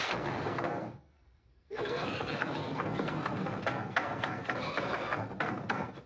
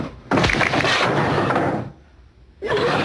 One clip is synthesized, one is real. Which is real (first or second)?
second